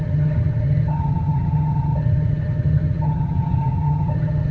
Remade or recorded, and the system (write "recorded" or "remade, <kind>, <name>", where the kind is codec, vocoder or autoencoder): remade, vocoder, HiFi-GAN